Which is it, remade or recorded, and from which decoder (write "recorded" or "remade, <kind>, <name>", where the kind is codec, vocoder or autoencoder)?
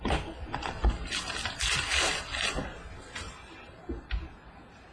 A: recorded